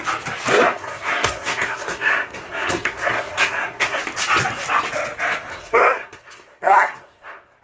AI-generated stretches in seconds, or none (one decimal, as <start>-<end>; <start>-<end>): 0.5-4.0; 5.5-7.6